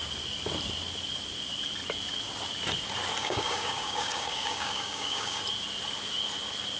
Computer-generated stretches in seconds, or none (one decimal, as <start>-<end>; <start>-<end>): 3.2-5.4